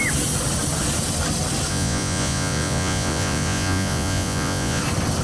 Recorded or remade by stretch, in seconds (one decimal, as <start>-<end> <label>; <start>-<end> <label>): 0.0-1.7 recorded; 1.7-4.8 remade; 4.8-5.2 recorded